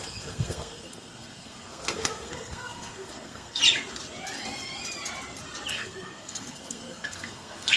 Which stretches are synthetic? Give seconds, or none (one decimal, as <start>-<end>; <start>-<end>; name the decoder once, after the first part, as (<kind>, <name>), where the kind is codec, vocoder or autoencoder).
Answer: 0.0-3.6 (codec, SNAC); 5.7-7.8